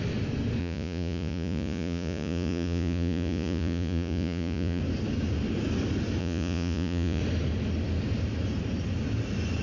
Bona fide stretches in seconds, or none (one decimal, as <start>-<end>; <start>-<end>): 0.0-0.6; 4.8-6.2; 7.2-9.6

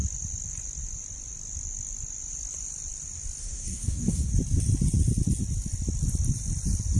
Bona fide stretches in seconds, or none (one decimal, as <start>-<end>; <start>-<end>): 0.0-3.4; 4.3-7.0

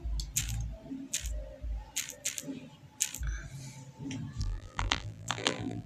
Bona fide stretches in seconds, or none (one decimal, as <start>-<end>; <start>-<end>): 0.0-4.4